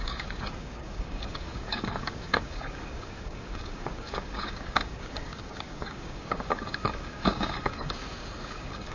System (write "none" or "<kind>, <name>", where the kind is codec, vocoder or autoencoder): codec, DAC